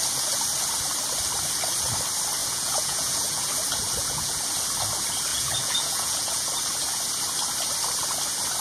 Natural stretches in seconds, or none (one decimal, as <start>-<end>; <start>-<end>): 0.0-2.4; 3.5-4.0; 4.5-5.3; 6.5-8.6

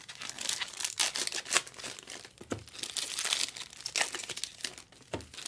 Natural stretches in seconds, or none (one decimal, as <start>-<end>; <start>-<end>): 0.0-5.5

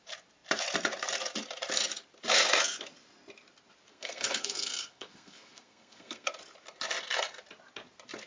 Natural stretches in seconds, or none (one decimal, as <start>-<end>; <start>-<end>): 0.0-3.9; 6.4-8.3